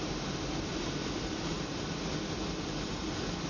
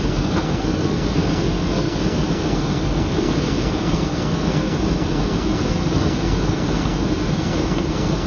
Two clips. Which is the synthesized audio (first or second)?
second